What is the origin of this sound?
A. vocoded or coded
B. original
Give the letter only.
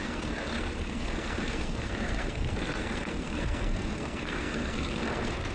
A